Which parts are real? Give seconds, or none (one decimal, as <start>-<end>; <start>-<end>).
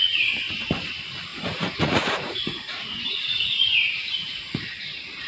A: 0.0-1.3; 4.5-5.3